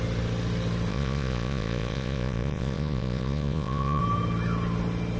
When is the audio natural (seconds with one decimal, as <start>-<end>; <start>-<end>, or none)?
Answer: 0.0-0.9; 4.0-5.2